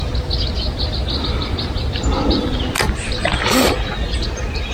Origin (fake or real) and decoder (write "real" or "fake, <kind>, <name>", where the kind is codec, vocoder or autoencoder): real